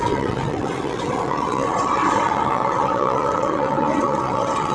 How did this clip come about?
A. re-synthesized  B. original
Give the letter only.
A